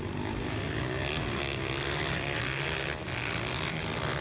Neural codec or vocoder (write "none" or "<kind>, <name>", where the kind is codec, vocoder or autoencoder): none